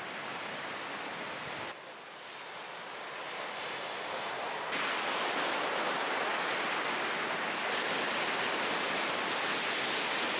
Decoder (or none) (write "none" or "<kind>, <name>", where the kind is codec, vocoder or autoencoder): none